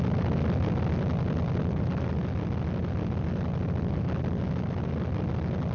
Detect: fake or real real